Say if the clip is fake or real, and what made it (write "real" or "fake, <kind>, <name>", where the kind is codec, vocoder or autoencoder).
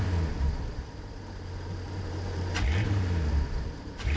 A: fake, vocoder, BigVGAN v2